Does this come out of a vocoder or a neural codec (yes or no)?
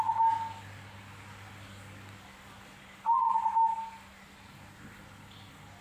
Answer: no